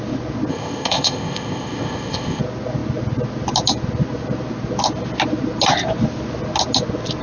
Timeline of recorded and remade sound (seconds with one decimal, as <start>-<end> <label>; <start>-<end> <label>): 0.0-0.5 recorded; 0.5-2.4 remade; 2.4-7.2 recorded